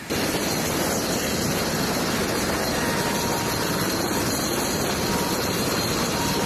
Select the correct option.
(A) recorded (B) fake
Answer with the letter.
A